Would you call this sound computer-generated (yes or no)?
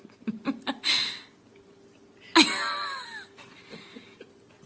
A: no